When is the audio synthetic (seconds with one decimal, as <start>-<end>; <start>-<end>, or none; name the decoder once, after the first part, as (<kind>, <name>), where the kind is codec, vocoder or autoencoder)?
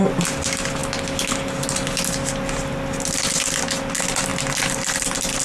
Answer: none